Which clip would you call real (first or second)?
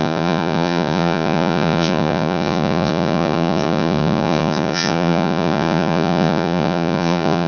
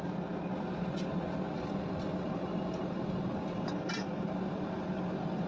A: second